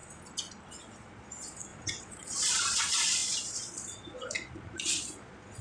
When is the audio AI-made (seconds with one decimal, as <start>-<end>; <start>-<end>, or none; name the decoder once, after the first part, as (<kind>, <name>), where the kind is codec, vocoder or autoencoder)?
0.8-5.6 (vocoder, Vocos)